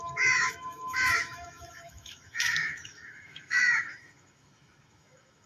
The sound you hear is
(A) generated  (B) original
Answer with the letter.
A